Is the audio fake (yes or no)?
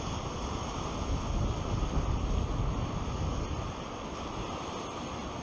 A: no